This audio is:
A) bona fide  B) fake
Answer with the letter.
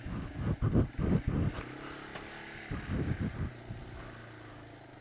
A